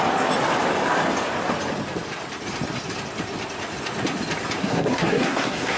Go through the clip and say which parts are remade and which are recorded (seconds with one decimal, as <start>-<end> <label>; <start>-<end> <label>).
0.0-4.6 recorded; 4.6-5.8 remade